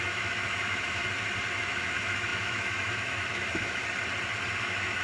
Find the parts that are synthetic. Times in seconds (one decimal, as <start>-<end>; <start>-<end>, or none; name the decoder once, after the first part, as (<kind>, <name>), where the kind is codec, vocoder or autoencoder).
0.0-1.0 (autoencoder, DAC-VAE); 1.6-3.8; 4.6-5.0